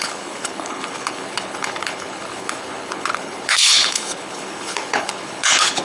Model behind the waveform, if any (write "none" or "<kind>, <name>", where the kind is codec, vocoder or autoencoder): codec, HILCodec